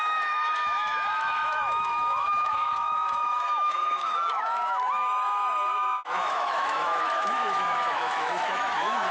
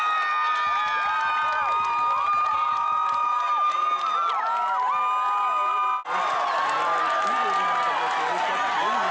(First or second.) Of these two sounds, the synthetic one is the first